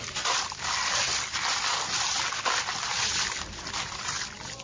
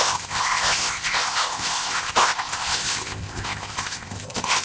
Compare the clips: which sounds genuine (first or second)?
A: first